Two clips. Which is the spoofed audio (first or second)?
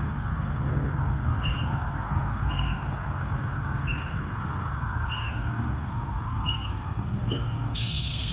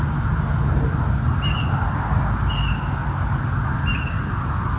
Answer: first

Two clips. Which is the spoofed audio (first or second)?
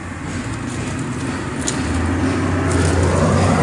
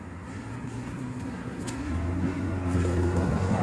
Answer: second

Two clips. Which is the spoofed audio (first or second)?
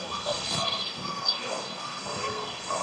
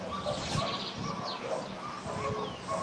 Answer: first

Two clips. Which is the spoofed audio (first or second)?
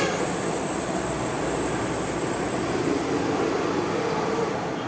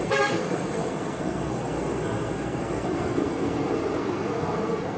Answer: second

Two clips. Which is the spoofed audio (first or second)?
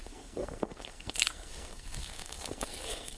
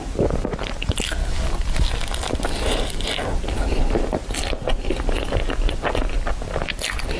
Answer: first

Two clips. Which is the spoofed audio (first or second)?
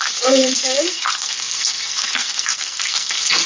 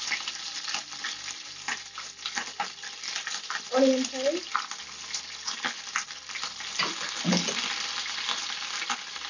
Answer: first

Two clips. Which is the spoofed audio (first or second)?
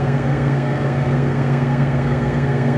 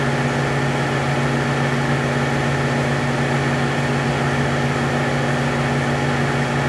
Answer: first